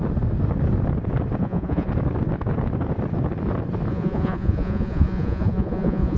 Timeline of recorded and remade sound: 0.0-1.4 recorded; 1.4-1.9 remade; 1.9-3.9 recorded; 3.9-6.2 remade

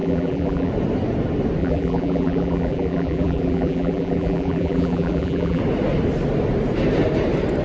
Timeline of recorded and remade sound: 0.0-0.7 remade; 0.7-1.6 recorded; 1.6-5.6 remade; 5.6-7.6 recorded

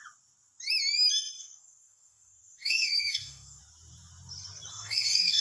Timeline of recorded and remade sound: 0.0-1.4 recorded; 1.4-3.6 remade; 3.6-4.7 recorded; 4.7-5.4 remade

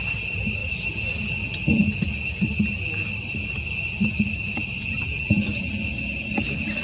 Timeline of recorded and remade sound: 0.0-6.8 recorded